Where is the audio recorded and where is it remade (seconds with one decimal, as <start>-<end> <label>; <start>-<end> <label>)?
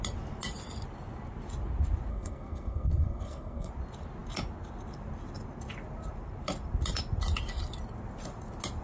0.0-2.1 recorded; 2.1-3.7 remade; 3.7-8.8 recorded